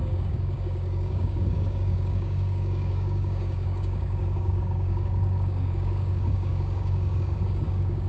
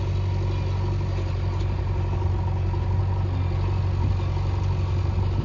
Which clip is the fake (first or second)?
first